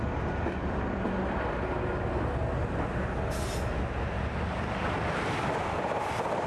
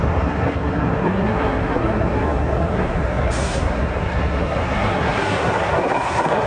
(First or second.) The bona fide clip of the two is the first